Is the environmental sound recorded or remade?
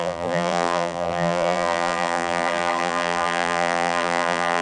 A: remade